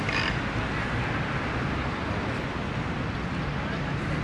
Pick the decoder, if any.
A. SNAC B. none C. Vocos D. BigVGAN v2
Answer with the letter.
B